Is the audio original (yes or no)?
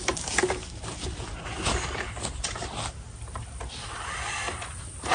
yes